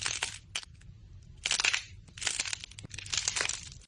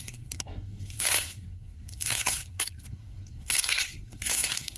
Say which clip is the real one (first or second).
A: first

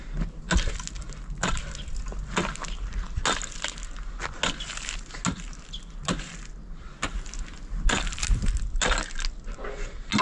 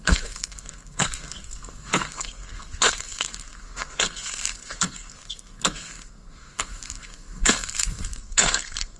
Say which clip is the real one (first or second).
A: first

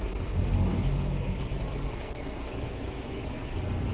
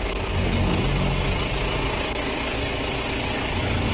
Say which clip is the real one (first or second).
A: second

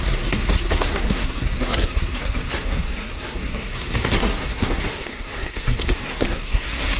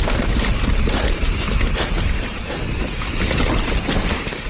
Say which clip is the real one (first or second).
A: second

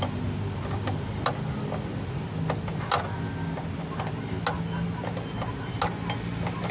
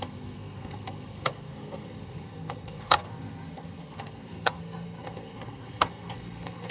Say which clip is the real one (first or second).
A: first